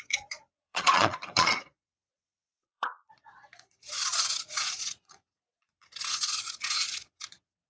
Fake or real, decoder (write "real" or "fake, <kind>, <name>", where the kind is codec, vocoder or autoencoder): fake, vocoder, Vocos